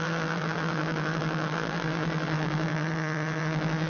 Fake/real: fake